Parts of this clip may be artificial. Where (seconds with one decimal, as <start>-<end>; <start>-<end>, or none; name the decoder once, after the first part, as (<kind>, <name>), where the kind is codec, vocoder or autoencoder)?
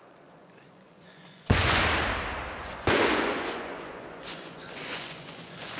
0.0-1.8 (vocoder, Vocos); 2.6-5.8